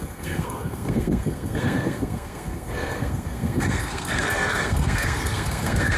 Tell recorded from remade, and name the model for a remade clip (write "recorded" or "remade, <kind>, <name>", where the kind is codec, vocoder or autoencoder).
remade, codec, SNAC